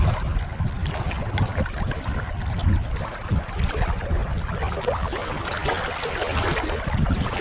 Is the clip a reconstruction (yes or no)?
no